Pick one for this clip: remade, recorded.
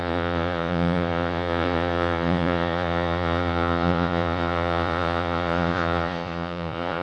remade